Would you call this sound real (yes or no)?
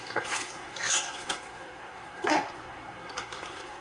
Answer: no